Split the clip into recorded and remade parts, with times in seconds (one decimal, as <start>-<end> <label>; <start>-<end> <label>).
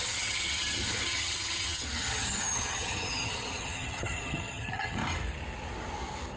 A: 0.0-5.0 remade; 5.0-6.4 recorded